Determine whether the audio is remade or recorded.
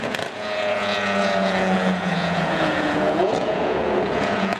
remade